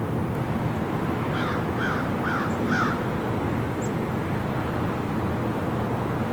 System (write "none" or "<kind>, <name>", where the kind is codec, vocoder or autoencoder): none